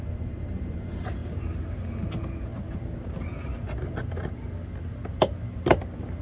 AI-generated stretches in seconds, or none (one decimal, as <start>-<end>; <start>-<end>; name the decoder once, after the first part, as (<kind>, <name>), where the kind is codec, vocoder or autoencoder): 0.0-2.5 (vocoder, BigVGAN v2)